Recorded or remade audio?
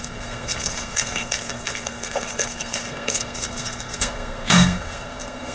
remade